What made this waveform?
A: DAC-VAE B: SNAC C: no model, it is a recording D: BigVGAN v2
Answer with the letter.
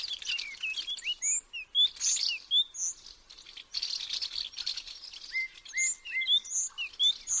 C